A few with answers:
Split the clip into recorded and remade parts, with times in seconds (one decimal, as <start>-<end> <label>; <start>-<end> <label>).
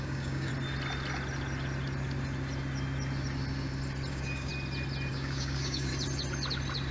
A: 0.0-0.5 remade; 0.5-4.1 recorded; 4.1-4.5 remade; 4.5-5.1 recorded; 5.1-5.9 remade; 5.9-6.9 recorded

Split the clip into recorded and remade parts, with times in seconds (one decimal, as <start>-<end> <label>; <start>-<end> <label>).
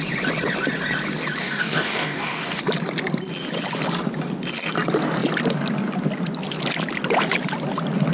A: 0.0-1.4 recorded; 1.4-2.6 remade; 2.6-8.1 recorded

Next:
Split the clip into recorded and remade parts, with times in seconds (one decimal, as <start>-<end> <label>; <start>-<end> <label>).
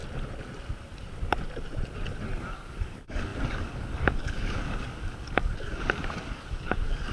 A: 0.0-2.4 recorded; 2.4-7.1 remade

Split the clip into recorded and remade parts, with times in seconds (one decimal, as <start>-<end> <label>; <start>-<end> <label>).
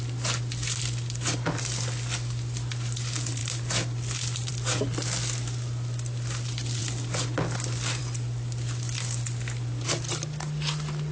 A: 0.0-11.1 recorded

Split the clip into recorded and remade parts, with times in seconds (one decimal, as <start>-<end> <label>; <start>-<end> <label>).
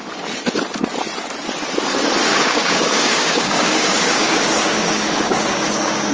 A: 0.0-2.3 recorded; 2.3-6.1 remade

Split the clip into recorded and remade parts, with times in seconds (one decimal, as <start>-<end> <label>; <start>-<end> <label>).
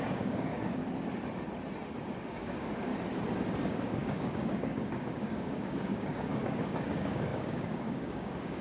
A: 0.0-0.8 remade; 0.8-2.3 recorded; 2.3-2.9 remade; 2.9-3.6 recorded; 3.6-8.6 remade